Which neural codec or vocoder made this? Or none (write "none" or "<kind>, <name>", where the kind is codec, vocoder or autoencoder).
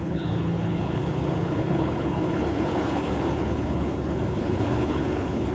codec, HILCodec